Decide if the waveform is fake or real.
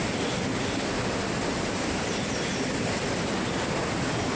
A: fake